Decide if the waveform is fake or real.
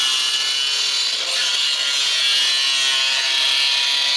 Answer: real